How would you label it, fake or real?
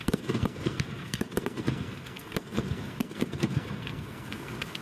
fake